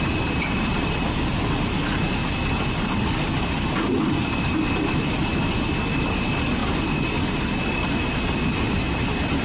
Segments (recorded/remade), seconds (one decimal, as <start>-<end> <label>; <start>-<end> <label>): 0.0-9.4 recorded